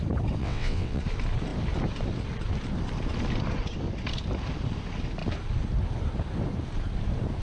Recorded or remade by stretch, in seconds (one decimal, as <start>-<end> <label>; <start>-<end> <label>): 0.0-0.4 recorded; 0.4-1.0 remade; 1.0-7.4 recorded